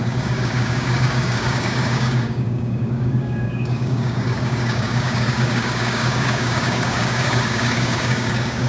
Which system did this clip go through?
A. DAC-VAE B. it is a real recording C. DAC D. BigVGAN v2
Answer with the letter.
C